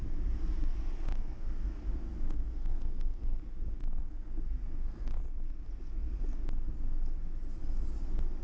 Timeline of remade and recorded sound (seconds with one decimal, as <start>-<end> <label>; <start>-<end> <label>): 0.0-1.1 recorded; 1.1-3.6 remade; 3.6-4.0 recorded; 4.0-5.2 remade; 5.2-8.4 recorded